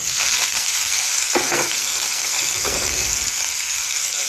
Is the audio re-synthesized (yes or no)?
yes